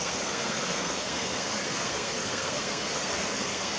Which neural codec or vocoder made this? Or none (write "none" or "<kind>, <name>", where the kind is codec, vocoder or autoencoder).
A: codec, SNAC